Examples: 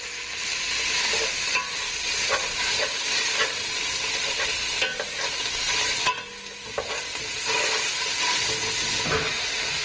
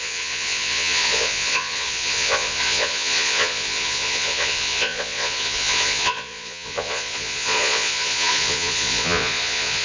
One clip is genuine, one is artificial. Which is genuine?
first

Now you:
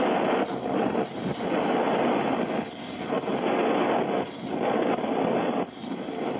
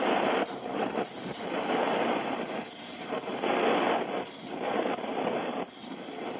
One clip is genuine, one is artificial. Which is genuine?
first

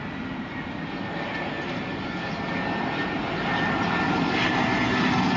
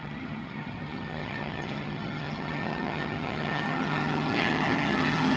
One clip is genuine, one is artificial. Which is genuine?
first